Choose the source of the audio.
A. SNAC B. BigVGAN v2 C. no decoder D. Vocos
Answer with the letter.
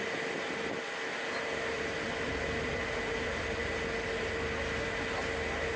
C